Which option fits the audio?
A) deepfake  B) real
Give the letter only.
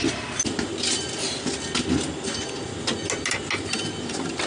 B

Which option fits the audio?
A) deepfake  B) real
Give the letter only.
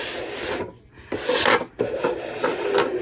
B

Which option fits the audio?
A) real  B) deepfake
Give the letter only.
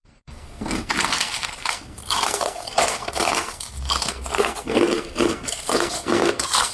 B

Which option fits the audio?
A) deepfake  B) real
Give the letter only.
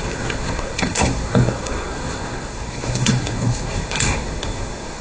A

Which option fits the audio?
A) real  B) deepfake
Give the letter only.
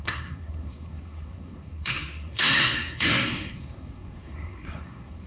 B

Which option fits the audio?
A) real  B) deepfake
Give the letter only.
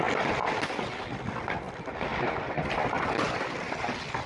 A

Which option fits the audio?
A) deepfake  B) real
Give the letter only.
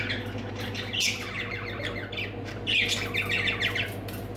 B